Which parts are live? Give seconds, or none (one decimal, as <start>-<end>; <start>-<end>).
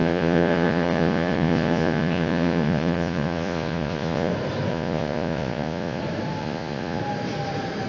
4.3-4.7; 6.0-6.4; 7.0-7.9